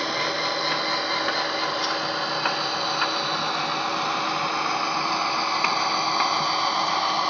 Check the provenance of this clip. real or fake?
real